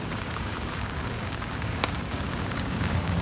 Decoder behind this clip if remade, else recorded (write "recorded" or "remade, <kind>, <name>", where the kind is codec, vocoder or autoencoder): remade, codec, DAC